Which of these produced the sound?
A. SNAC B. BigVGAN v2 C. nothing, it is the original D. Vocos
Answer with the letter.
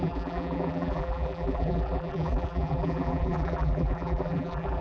B